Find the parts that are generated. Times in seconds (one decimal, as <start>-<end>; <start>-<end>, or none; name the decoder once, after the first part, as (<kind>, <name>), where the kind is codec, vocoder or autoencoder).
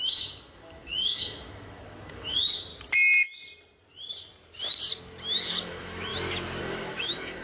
0.0-2.7 (autoencoder, DAC-VAE); 5.5-6.1; 6.6-7.4